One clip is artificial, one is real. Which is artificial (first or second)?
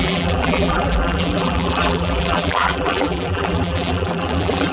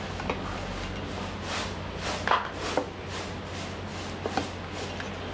first